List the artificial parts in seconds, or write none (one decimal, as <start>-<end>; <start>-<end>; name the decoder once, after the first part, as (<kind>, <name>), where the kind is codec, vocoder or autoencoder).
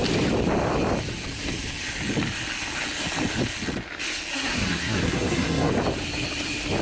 4.3-5.7 (codec, SNAC)